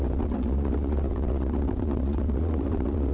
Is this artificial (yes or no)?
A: yes